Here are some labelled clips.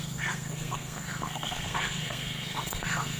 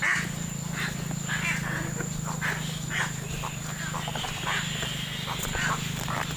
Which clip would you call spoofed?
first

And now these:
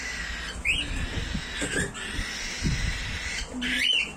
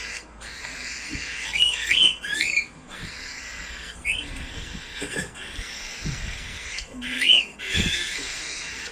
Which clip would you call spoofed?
second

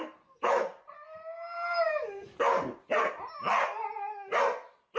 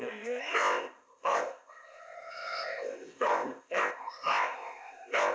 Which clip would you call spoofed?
second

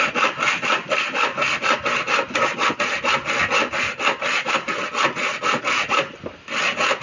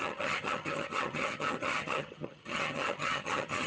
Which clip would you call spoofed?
second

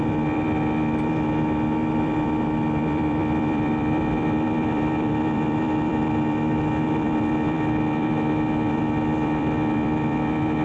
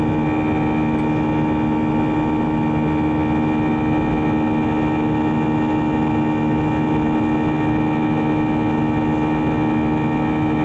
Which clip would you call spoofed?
first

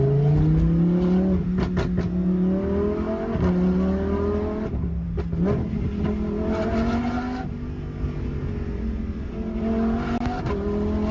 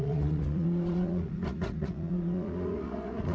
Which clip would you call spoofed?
second